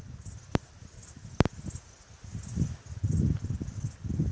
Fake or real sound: real